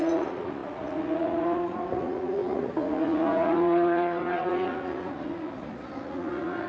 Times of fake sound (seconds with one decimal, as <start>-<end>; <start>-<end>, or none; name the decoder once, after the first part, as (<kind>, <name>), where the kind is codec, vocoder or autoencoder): 0.0-6.7 (vocoder, Vocos)